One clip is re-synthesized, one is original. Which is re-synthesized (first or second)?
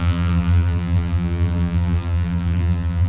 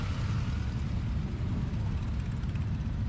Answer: first